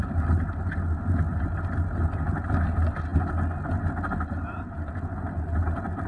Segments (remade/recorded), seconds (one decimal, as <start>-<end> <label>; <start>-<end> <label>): 0.0-6.1 recorded